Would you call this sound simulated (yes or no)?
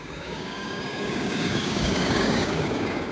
yes